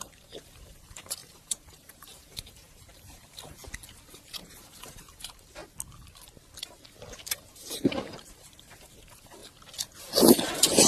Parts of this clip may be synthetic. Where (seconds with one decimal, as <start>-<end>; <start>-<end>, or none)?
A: 0.0-3.6; 4.1-5.6; 7.2-9.4; 10.3-10.9